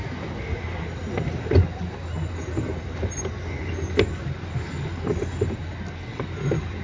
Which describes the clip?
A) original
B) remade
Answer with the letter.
A